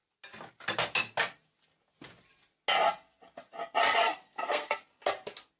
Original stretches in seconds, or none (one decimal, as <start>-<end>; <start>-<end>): 0.0-4.0; 4.8-5.6